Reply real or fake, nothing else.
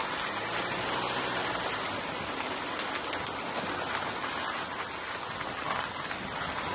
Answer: real